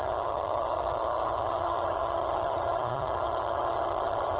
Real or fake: fake